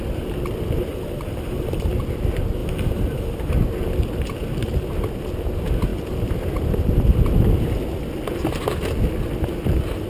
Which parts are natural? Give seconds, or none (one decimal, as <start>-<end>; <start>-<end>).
0.0-0.9; 1.9-2.6; 3.5-10.1